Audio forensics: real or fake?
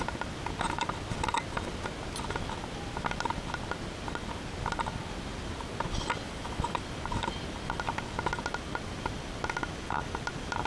real